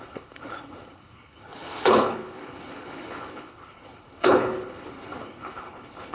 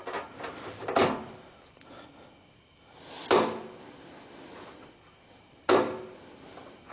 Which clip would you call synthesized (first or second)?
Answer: first